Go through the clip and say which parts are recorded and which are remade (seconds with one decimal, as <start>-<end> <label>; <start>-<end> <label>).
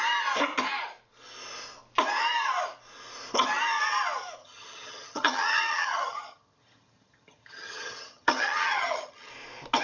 0.0-4.4 recorded; 4.4-9.3 remade; 9.3-9.8 recorded